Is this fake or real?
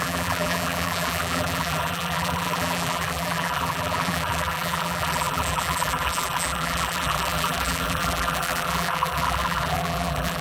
fake